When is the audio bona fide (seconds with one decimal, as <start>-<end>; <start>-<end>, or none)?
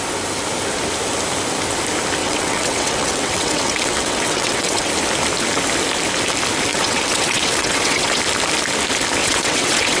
0.0-2.2; 4.9-6.7; 8.2-9.2